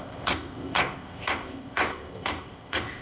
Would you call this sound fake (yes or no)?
yes